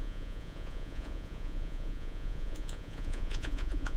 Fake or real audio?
fake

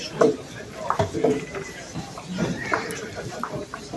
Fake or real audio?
fake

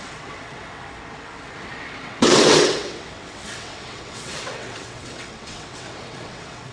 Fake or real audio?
fake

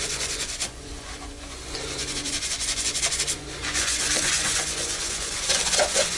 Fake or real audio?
fake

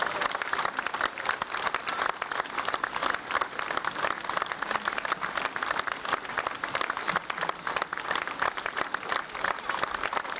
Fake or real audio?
real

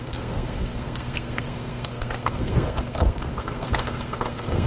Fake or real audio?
fake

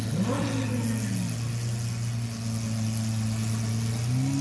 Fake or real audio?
real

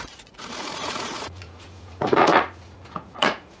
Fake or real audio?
fake